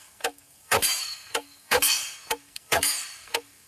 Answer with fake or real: fake